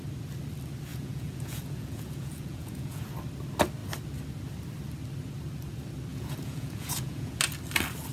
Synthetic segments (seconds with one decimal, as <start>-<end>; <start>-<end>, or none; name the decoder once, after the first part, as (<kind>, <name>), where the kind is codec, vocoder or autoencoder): 0.9-3.1 (vocoder, Vocos); 6.1-7.4